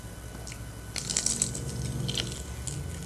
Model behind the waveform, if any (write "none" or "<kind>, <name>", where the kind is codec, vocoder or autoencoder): none